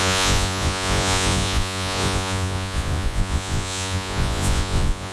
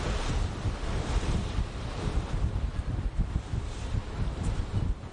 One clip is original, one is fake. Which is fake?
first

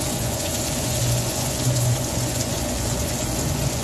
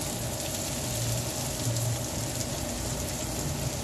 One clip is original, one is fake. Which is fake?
first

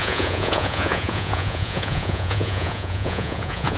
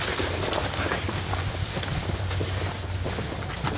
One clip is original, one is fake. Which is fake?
first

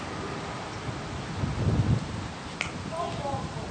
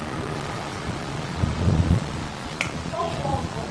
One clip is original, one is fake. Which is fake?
second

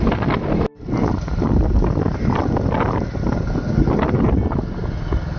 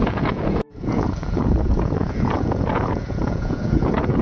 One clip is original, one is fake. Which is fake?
second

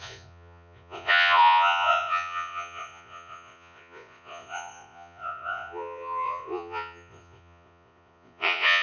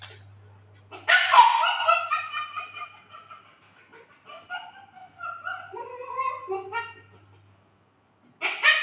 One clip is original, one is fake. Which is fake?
first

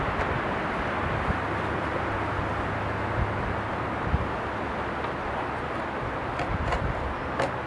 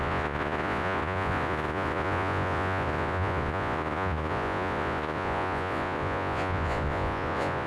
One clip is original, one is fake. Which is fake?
second